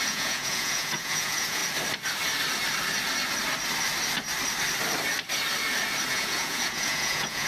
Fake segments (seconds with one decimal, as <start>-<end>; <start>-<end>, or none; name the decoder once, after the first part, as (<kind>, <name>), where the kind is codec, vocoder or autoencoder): 0.0-1.6 (vocoder, Vocos); 6.1-7.5